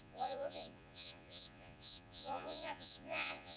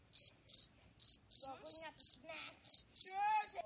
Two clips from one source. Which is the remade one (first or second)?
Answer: first